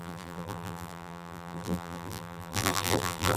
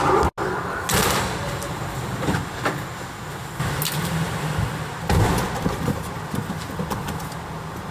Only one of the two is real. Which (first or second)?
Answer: second